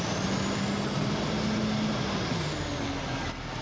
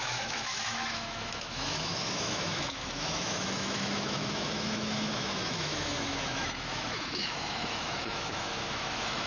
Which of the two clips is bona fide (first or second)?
first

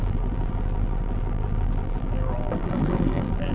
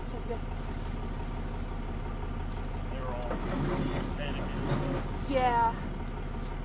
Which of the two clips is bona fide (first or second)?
second